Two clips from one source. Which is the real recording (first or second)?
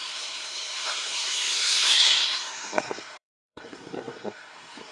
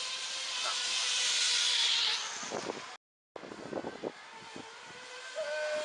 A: second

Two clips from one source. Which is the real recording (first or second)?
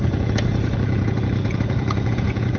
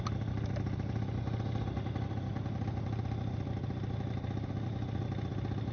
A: second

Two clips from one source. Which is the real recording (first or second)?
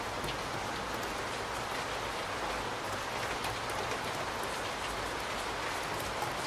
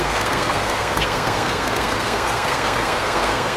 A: first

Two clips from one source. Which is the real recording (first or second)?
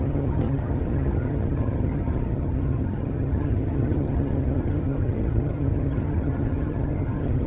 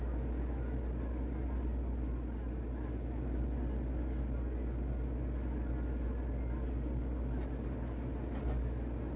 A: second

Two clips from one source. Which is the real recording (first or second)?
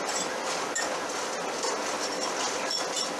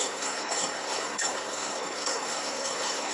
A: first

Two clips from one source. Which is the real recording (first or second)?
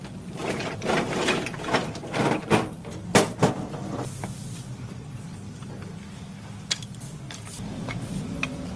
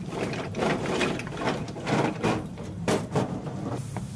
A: first